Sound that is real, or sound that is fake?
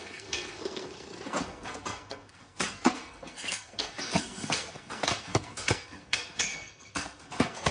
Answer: fake